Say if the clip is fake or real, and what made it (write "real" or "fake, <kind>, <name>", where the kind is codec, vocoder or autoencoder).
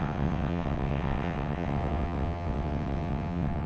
fake, vocoder, WaveNeXt